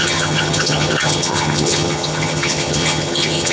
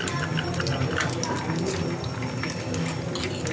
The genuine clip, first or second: second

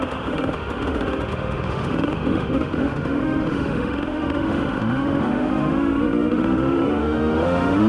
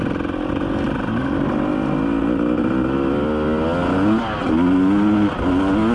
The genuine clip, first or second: second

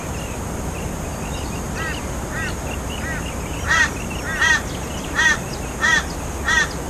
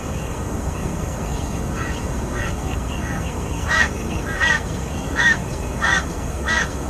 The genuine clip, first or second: first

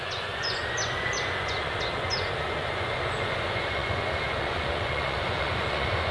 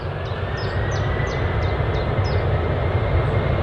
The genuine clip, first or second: second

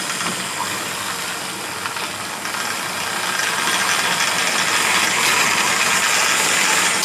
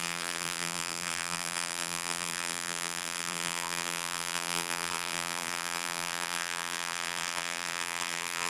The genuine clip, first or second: first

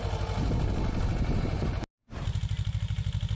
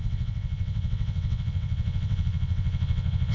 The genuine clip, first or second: first